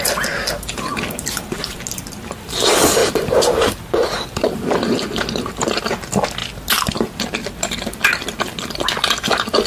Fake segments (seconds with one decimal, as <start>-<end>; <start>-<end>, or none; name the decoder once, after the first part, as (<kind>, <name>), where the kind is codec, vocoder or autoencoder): 3.0-5.8 (vocoder, BigVGAN v2)